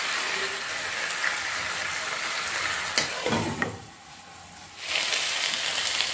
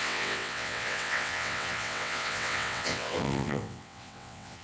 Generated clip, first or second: second